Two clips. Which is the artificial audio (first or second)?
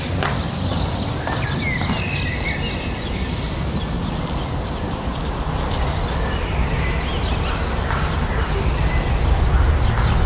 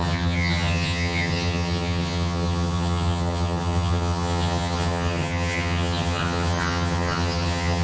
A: second